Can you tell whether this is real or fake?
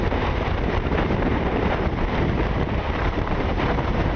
fake